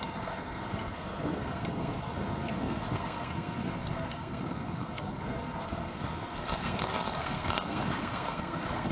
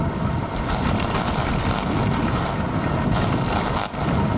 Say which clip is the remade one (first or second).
first